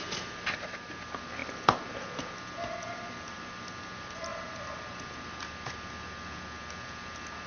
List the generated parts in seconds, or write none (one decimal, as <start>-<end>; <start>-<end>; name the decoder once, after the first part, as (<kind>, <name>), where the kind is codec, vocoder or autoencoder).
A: none